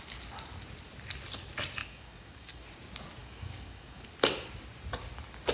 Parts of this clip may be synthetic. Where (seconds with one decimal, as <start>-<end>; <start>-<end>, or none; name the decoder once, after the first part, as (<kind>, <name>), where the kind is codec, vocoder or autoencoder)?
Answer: 1.8-2.6 (codec, DAC); 3.2-4.1